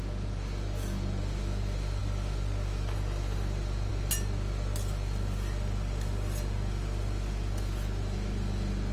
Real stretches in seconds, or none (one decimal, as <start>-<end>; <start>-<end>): 0.0-8.9